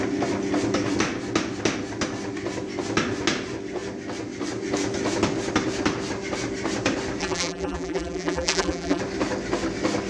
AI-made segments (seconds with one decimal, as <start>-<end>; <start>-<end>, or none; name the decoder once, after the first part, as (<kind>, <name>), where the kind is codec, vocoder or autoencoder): 7.2-9.0 (vocoder, BigVGAN v2)